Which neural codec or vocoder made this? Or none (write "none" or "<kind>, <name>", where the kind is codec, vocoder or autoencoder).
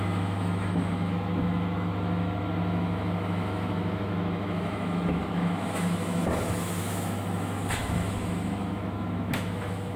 autoencoder, DAC-VAE